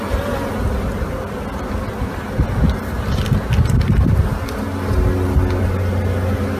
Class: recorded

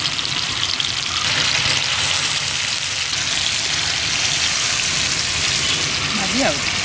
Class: recorded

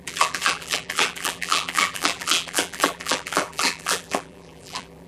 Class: remade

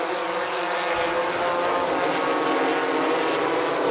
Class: recorded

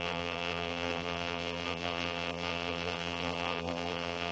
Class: remade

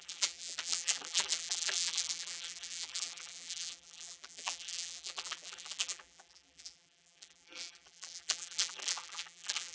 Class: remade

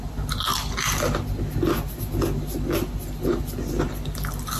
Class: recorded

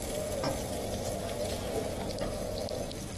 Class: recorded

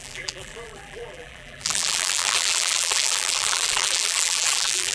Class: remade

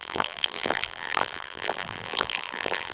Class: remade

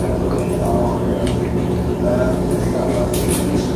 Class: recorded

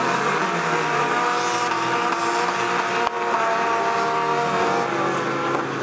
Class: recorded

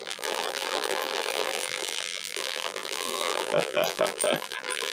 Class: remade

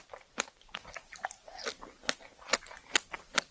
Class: recorded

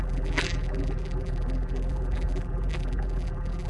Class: remade